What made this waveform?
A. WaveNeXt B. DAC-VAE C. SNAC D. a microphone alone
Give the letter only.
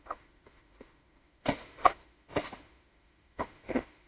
B